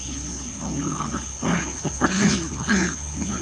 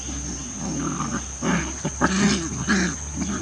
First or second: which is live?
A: second